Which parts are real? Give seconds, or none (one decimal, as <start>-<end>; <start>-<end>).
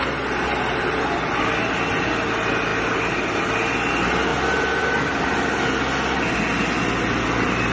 0.0-7.7